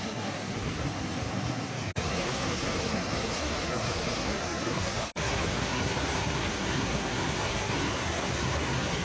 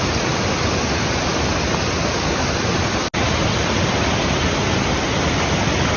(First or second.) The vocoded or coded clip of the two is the first